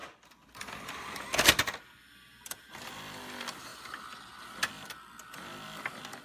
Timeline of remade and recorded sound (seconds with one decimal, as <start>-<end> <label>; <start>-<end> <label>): 0.0-1.2 remade; 1.2-6.2 recorded